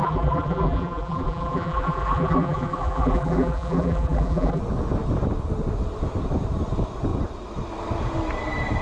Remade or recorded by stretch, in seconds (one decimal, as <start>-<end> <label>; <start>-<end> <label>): 0.0-4.6 remade; 4.6-8.8 recorded